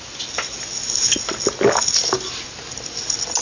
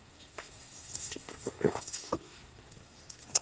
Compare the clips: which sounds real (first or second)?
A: first